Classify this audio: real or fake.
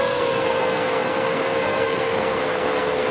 fake